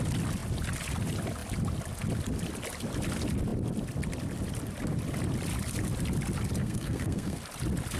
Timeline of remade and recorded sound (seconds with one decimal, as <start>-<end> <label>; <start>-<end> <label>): 0.0-6.6 recorded; 6.6-7.4 remade; 7.4-8.0 recorded